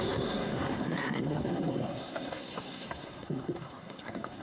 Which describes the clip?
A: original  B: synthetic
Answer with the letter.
B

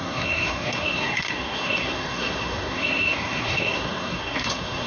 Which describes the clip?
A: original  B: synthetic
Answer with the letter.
B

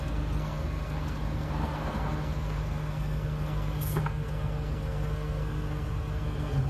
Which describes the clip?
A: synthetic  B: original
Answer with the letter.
A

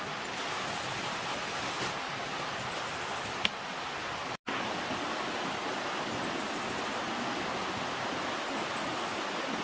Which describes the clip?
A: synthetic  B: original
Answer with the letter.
B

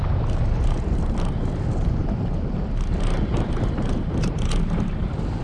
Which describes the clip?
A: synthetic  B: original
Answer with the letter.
B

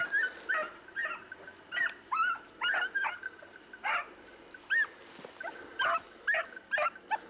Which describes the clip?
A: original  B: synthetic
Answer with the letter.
A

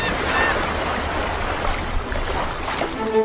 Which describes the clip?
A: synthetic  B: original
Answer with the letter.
B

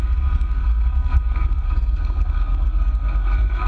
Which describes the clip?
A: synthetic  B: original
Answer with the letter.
A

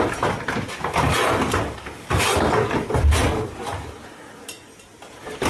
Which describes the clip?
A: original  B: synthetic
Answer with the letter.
A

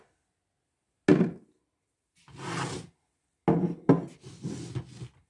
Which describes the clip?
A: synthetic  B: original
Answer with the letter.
B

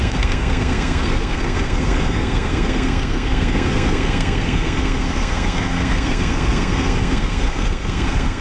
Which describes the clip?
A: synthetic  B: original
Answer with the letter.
A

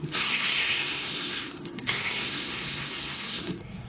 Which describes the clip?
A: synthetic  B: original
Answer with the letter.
A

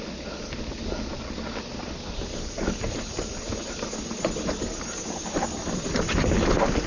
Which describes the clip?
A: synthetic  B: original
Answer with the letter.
B